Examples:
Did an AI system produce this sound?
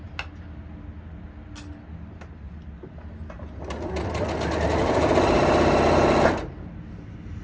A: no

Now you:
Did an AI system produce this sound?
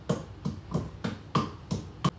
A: no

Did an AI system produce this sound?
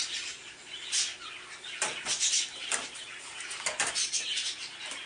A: no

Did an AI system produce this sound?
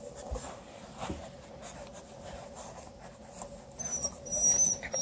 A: no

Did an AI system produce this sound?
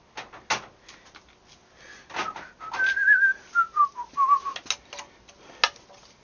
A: no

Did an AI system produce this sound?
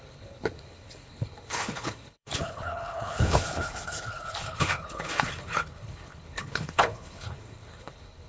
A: yes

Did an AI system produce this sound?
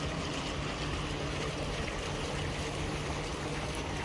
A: no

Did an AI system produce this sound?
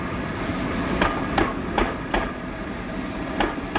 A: no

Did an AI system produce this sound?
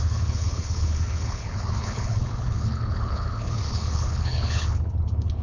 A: yes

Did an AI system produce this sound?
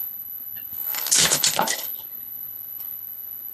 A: yes